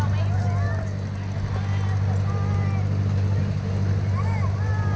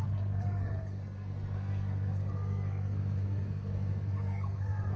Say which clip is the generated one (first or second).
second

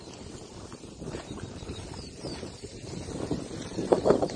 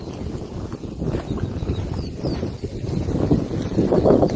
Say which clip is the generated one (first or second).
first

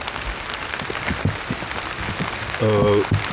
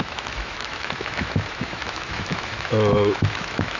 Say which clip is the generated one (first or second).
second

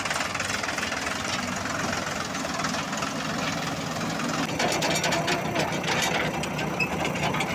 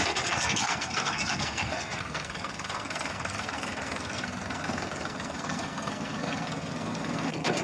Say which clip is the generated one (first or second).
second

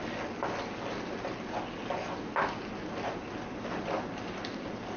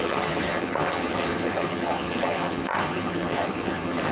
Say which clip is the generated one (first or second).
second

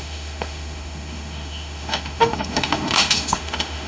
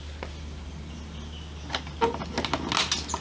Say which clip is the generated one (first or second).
first